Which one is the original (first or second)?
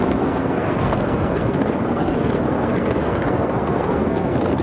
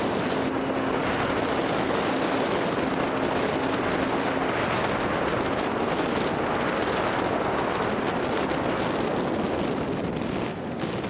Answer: second